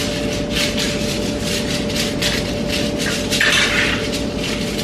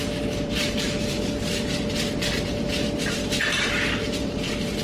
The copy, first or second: second